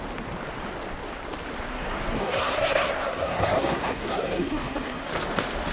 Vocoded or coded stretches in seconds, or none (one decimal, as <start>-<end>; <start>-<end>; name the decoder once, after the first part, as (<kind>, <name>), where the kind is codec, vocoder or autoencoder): 1.7-5.1 (codec, SNAC)